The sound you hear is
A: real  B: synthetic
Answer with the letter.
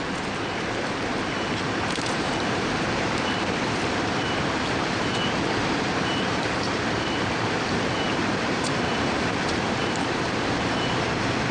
B